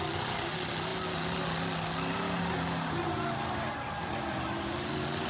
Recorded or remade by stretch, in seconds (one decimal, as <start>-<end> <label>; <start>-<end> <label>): 0.0-5.3 recorded